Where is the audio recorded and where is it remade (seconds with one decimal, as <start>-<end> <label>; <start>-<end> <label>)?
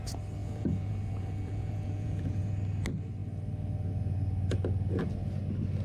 0.0-0.4 recorded; 0.4-2.5 remade; 2.5-5.8 recorded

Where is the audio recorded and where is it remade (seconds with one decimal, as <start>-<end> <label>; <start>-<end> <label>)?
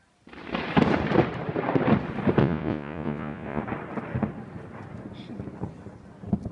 0.0-2.4 recorded; 2.4-3.6 remade; 3.6-6.5 recorded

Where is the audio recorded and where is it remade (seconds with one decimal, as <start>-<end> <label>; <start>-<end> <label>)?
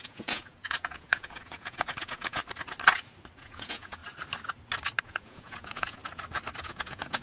0.0-2.4 remade; 2.4-3.4 recorded; 3.4-4.0 remade; 4.0-5.0 recorded; 5.0-6.0 remade; 6.0-6.6 recorded; 6.6-7.2 remade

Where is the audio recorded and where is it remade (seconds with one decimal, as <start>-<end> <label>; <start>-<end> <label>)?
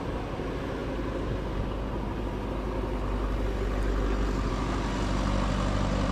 0.0-6.1 recorded